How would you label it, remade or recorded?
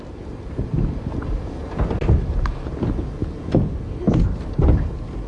recorded